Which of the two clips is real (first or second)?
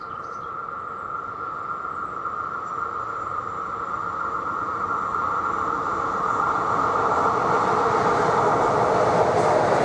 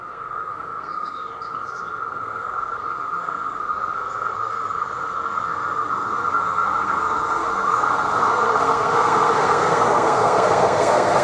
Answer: first